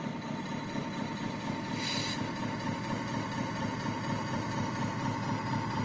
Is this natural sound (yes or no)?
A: no